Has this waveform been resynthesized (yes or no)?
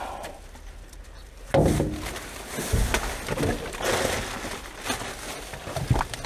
no